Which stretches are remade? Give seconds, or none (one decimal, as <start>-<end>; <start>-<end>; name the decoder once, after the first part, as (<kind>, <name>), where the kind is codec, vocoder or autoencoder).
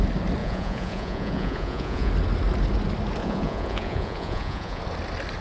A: 0.4-2.1 (vocoder, Vocos); 3.2-4.8